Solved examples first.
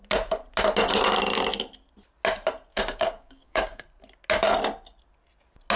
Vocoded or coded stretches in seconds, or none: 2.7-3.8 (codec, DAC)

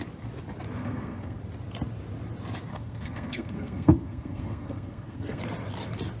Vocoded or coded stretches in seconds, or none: 0.8-1.4 (codec, SNAC); 2.7-5.4

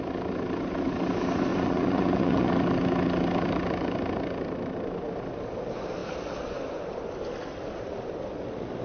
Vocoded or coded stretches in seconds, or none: 1.5-2.5 (vocoder, Vocos)

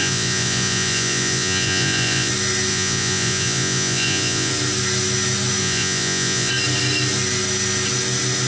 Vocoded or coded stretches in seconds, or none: 0.0-2.3 (vocoder, Vocos); 2.7-4.5; 5.6-6.5

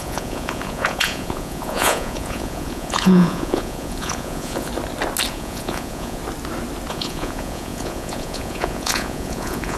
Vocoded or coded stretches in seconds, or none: 0.0-4.7 (vocoder, Vocos); 5.3-6.2; 6.9-9.8